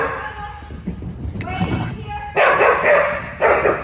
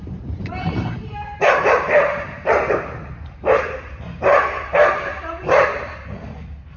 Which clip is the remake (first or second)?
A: second